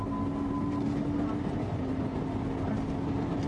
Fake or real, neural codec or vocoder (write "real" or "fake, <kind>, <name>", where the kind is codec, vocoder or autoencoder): real